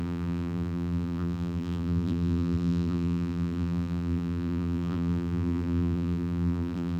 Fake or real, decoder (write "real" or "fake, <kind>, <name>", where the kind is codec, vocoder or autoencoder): fake, vocoder, BigVGAN v2